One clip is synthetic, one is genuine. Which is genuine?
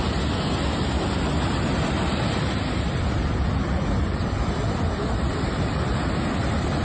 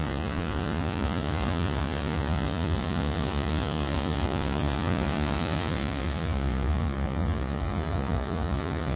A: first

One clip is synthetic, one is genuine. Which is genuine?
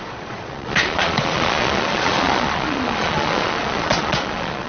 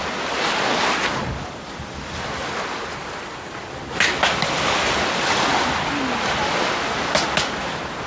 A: second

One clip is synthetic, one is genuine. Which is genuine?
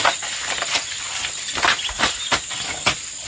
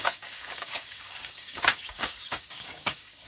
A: first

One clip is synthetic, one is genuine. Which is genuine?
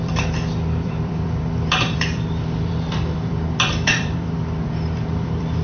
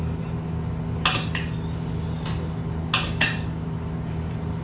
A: second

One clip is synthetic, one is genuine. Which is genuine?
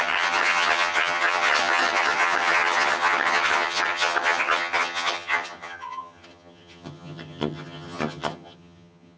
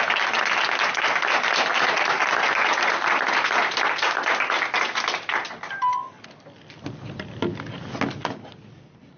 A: second